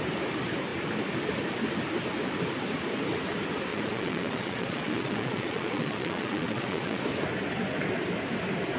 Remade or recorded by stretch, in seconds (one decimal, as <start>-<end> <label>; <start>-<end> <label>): 0.0-3.7 recorded; 3.7-7.0 remade; 7.0-8.8 recorded